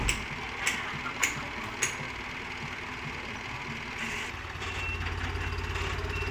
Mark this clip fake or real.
real